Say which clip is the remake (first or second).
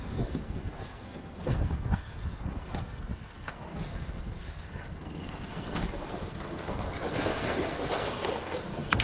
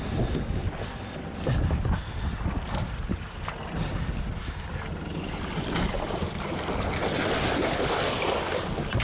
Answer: first